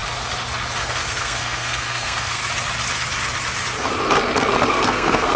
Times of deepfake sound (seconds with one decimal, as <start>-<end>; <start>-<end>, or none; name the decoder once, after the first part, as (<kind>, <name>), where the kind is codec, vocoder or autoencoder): 0.8-2.4 (codec, SNAC); 4.7-5.4